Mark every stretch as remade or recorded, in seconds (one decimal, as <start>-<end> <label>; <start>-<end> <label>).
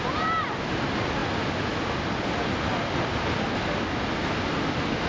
0.0-5.1 recorded